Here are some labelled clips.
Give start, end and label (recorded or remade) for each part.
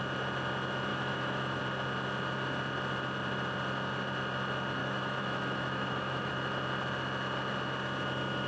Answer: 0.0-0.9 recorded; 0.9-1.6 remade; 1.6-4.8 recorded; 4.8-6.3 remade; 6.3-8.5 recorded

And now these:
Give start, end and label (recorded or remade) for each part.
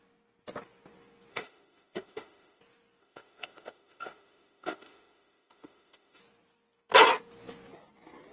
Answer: 0.0-1.3 recorded; 1.3-2.6 remade; 2.6-3.0 recorded; 3.0-6.2 remade; 6.2-8.3 recorded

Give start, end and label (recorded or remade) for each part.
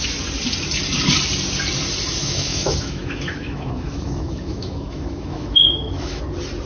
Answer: 0.0-2.2 recorded; 2.2-6.2 remade; 6.2-6.7 recorded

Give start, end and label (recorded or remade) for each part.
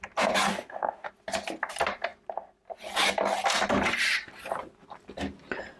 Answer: 0.0-0.5 recorded; 0.5-1.1 remade; 1.1-5.8 recorded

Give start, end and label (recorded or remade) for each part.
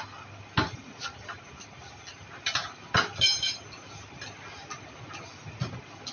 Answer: 0.0-6.1 recorded